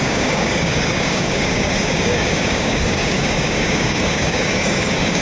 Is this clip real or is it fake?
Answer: fake